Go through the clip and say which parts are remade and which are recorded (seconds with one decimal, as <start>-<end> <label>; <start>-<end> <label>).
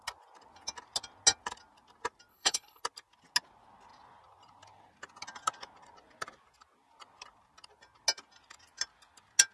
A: 0.0-2.3 recorded; 2.3-2.8 remade; 2.8-9.5 recorded